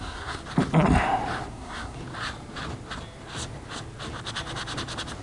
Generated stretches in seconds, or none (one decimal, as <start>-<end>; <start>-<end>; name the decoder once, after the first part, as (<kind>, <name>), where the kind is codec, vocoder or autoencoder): 0.0-0.4 (codec, SNAC); 1.5-2.0